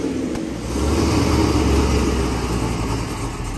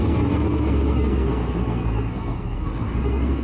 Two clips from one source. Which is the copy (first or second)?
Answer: second